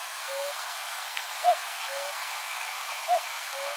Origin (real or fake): fake